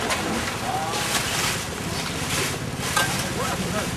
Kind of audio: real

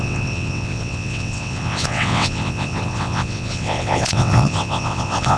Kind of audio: fake